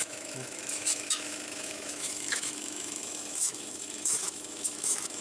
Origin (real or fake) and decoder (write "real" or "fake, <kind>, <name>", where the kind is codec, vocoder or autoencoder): fake, autoencoder, DAC-VAE